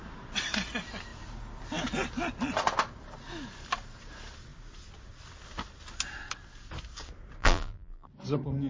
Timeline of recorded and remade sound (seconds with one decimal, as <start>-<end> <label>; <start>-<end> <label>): 0.0-7.4 recorded; 7.4-8.1 remade; 8.1-8.7 recorded